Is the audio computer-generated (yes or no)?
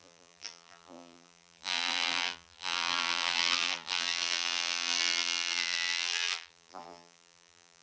yes